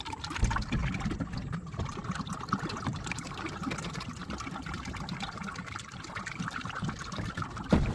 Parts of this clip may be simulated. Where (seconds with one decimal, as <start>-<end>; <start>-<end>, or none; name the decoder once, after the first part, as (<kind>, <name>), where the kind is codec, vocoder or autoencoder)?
0.0-0.8 (vocoder, BigVGAN v2); 1.8-7.9